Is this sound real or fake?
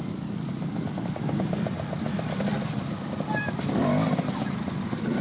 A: real